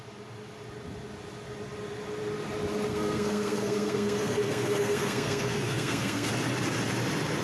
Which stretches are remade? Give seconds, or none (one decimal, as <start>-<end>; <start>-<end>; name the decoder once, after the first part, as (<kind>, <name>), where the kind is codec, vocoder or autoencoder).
2.9-6.3 (codec, SNAC)